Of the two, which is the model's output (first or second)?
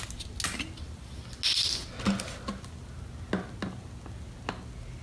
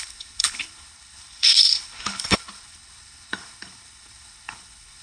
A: second